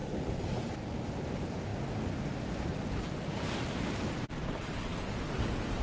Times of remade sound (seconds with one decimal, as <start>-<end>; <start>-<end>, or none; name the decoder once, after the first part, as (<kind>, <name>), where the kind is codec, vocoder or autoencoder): none